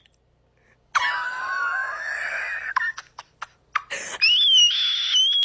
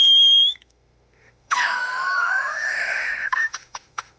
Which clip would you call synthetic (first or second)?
second